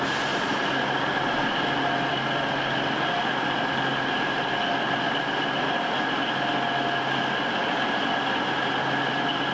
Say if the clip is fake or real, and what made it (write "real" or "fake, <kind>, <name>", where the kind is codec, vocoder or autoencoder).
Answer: real